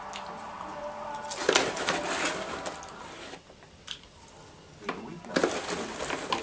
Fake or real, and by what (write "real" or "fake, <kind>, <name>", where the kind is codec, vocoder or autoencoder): real